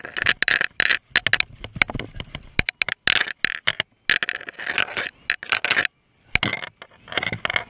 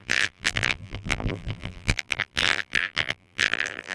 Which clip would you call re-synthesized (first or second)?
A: second